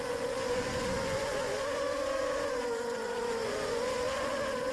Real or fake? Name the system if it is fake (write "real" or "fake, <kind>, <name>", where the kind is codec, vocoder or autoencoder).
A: fake, vocoder, Vocos